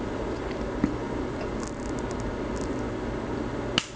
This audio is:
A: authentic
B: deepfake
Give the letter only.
A